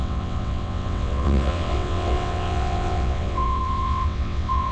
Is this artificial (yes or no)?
yes